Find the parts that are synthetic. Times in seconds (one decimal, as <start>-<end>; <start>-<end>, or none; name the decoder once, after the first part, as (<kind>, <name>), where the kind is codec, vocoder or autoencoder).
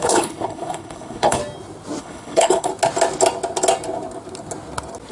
0.0-1.4 (codec, HILCodec); 2.0-2.7